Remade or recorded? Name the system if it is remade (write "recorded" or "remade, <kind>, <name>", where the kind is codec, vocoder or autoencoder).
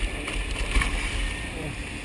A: recorded